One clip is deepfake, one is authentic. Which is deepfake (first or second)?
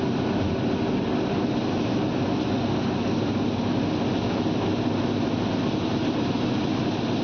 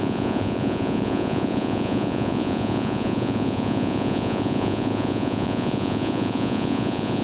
second